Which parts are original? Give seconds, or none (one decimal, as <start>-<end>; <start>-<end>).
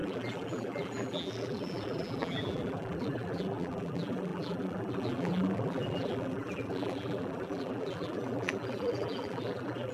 none